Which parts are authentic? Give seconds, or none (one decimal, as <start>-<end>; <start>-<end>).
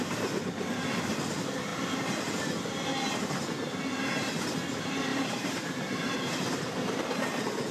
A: 0.0-5.1; 6.3-7.7